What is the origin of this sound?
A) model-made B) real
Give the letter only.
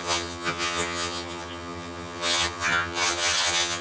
A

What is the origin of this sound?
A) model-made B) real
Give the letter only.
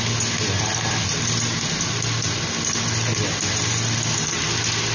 B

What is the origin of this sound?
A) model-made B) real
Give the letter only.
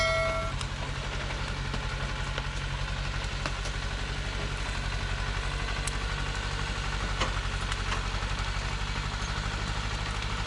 B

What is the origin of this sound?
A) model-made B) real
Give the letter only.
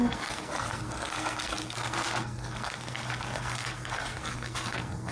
A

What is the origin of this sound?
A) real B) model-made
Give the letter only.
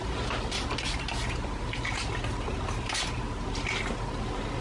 A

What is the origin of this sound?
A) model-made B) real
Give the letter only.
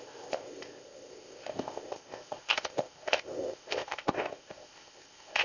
A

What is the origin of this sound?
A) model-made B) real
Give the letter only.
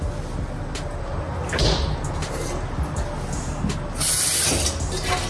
B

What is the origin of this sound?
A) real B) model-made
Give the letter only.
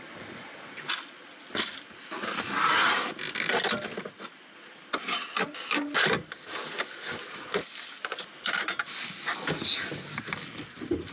A